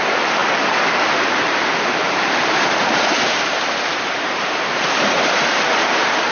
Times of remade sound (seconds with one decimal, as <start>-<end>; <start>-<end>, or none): 0.0-0.4; 1.1-6.3